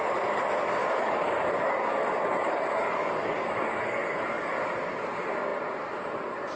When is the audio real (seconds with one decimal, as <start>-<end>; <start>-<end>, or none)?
0.0-0.8; 4.5-6.6